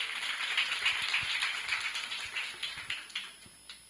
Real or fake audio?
real